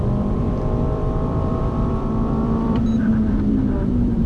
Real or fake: fake